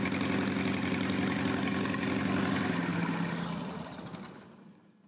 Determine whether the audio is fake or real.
real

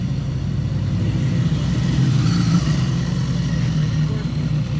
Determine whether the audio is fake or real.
real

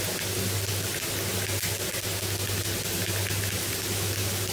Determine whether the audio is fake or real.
real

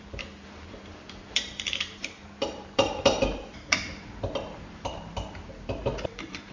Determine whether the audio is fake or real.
fake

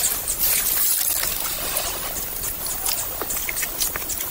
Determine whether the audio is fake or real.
real